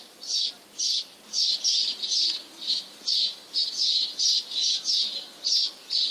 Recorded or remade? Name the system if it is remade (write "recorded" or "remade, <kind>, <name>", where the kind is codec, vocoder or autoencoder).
recorded